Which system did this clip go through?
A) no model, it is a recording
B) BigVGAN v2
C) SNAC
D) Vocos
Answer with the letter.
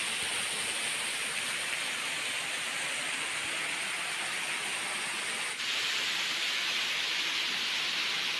A